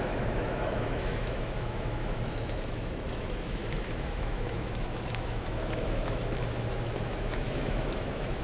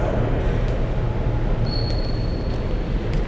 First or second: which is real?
second